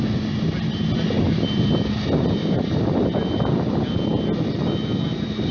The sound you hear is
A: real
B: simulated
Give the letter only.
A